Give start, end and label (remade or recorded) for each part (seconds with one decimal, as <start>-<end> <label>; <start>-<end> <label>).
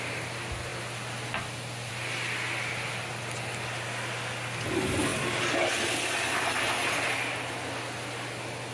0.0-8.7 recorded